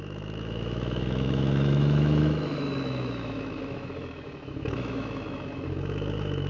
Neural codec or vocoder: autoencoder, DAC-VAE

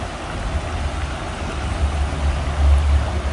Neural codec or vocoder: none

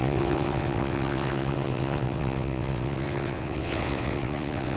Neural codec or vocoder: vocoder, WaveNeXt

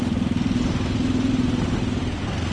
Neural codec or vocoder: none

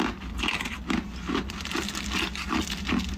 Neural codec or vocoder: none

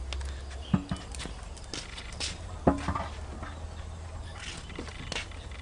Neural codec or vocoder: none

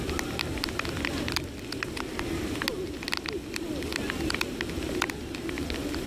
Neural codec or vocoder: none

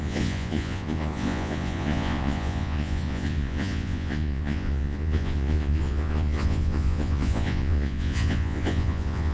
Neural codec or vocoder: vocoder, Vocos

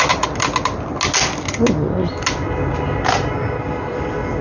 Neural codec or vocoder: none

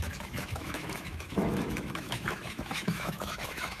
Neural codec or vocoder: autoencoder, DAC-VAE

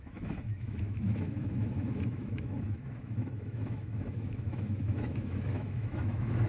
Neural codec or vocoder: autoencoder, DAC-VAE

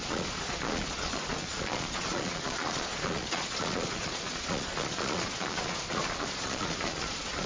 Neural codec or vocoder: vocoder, Vocos